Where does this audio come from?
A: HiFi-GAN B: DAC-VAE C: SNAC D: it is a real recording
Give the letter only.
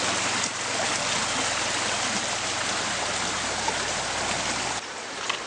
D